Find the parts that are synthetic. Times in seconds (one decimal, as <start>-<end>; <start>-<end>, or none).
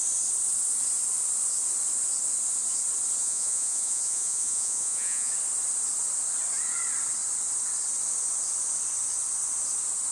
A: 3.2-5.3